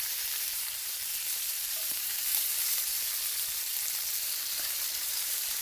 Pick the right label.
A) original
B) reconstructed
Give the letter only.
B